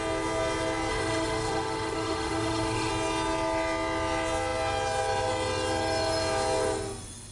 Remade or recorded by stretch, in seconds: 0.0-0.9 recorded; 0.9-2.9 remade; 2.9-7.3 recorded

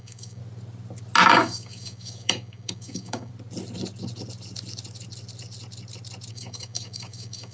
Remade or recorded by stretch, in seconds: 0.0-0.4 remade; 0.4-1.3 recorded; 1.3-3.3 remade; 3.3-6.3 recorded; 6.3-7.5 remade

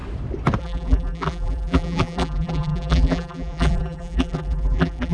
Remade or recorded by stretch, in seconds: 0.0-0.6 recorded; 0.6-5.1 remade

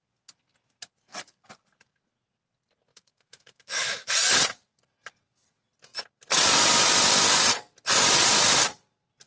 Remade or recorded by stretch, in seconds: 0.0-2.9 recorded; 2.9-4.1 remade; 4.1-9.3 recorded

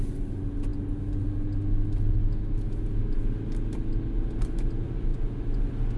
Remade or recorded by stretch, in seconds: 0.0-6.0 recorded

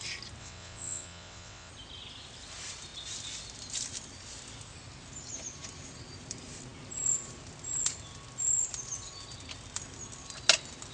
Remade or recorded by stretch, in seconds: 0.0-0.4 recorded; 0.4-1.7 remade; 1.7-10.9 recorded

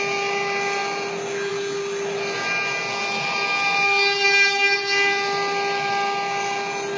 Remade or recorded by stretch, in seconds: 0.0-7.0 recorded

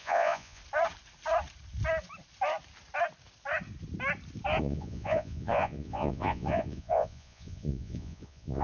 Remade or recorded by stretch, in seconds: 0.0-0.6 remade; 0.6-4.6 recorded; 4.6-8.6 remade